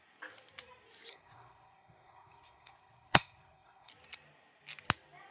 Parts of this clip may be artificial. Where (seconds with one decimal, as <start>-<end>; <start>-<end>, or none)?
1.1-3.9